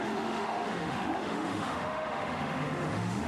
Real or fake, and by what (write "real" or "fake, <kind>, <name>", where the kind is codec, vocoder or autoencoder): fake, autoencoder, DAC-VAE